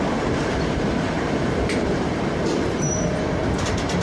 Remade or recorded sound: remade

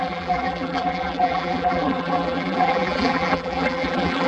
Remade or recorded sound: remade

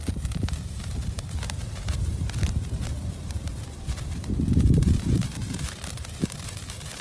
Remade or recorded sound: remade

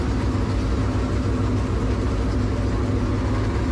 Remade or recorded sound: recorded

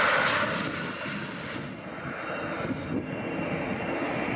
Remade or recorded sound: recorded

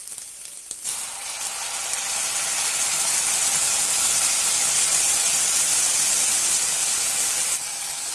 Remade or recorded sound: recorded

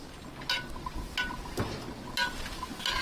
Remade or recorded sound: recorded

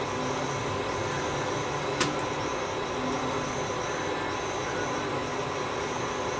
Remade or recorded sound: recorded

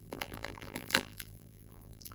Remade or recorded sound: remade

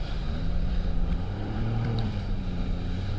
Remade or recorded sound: remade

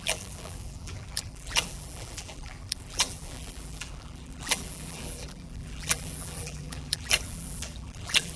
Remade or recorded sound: remade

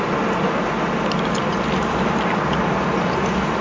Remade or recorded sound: recorded